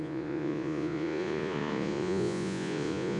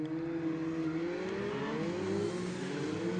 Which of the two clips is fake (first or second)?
first